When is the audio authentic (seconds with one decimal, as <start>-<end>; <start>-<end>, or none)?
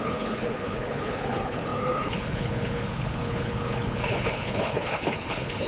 none